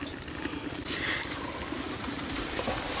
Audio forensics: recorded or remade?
recorded